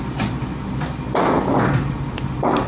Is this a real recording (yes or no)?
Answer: yes